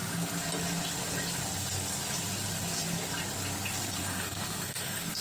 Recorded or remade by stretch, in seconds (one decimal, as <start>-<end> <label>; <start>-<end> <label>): 0.0-4.0 recorded; 4.0-5.2 remade